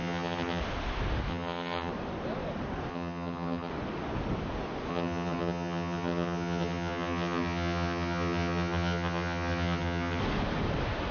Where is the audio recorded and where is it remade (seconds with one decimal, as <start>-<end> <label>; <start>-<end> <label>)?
0.0-0.6 remade; 0.6-1.3 recorded; 1.3-1.9 remade; 1.9-2.9 recorded; 2.9-3.7 remade; 3.7-4.9 recorded; 4.9-10.2 remade; 10.2-11.1 recorded